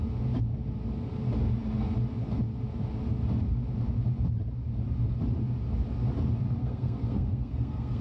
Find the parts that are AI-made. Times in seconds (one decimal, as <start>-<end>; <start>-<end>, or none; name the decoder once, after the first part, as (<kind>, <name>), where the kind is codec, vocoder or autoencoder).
6.6-8.0 (codec, SNAC)